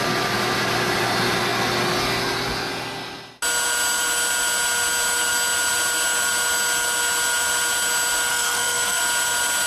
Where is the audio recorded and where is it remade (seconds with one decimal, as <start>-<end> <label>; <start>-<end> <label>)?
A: 0.0-8.3 recorded; 8.3-9.0 remade; 9.0-9.7 recorded